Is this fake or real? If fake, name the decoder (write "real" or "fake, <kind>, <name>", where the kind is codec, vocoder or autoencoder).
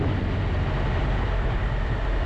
real